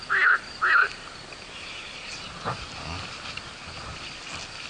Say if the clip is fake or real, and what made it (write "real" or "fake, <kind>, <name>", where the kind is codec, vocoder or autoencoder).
real